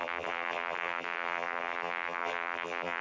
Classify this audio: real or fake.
fake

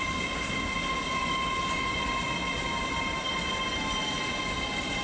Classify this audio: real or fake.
real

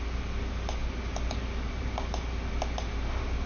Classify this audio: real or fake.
real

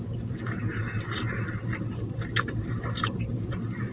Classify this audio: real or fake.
fake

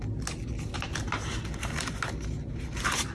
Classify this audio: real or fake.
real